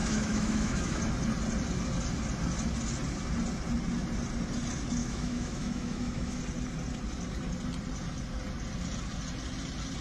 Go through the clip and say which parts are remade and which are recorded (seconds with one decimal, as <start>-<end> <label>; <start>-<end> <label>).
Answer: 0.0-1.0 remade; 1.0-5.0 recorded; 5.0-6.4 remade; 6.4-10.0 recorded